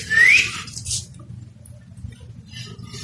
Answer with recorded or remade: recorded